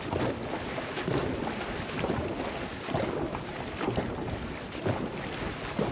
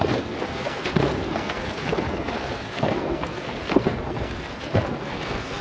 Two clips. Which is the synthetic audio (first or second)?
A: second